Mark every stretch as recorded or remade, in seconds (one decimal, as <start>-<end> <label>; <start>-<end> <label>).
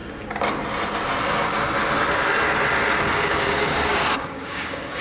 0.0-3.0 recorded; 3.0-5.0 remade